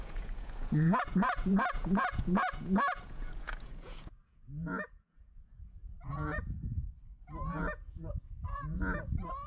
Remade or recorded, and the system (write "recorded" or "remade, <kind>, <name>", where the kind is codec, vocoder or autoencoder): remade, vocoder, Vocos